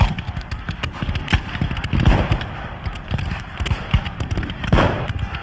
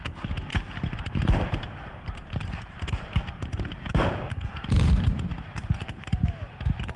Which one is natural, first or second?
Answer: first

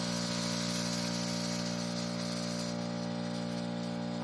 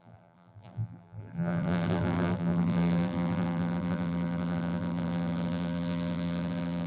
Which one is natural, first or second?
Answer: first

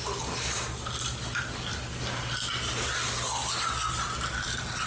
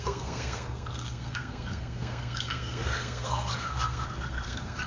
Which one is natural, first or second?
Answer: first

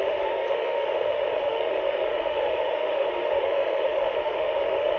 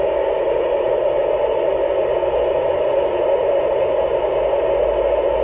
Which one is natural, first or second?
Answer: second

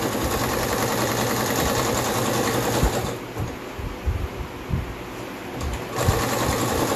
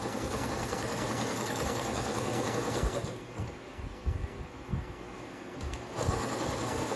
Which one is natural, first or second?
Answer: first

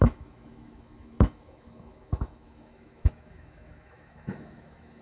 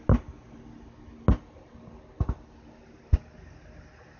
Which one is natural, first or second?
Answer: second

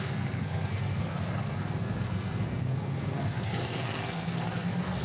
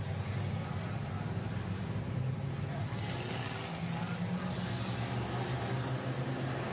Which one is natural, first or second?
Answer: second